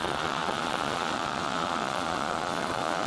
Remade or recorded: remade